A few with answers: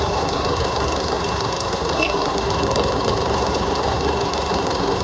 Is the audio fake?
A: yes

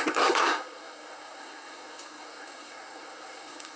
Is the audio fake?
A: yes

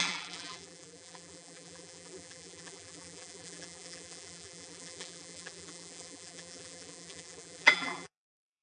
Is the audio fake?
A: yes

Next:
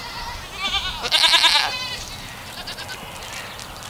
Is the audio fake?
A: no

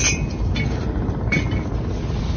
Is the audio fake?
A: no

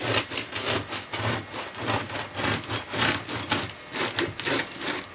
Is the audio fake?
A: no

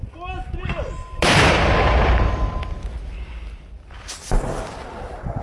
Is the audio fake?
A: no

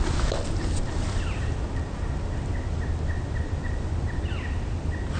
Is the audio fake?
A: no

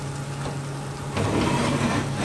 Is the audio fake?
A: no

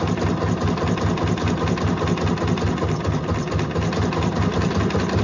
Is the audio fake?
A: no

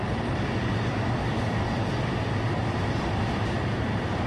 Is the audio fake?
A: no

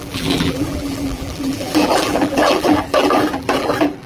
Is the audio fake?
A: yes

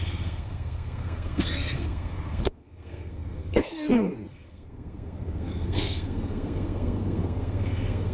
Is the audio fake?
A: yes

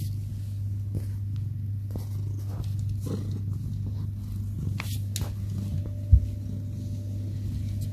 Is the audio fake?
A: no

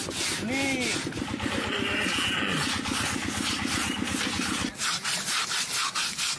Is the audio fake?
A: no